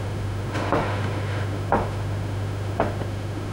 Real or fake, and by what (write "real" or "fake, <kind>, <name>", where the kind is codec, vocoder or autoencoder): fake, autoencoder, DAC-VAE